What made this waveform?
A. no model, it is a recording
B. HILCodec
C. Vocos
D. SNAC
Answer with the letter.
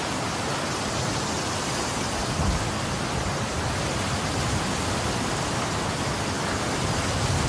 A